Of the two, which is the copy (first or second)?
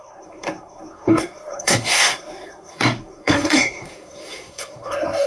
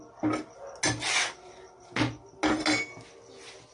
first